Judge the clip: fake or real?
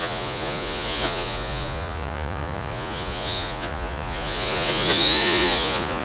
fake